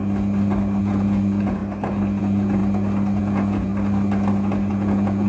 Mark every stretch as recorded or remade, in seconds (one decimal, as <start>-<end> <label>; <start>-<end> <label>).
0.0-0.8 recorded; 0.8-1.6 remade; 1.6-2.2 recorded; 2.2-2.6 remade; 2.6-3.2 recorded; 3.2-3.7 remade; 3.7-4.7 recorded; 4.7-5.3 remade

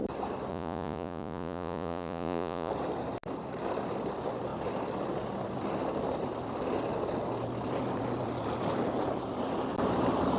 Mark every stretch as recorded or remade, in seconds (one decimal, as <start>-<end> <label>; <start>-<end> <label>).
0.0-0.5 recorded; 0.5-2.7 remade; 2.7-10.4 recorded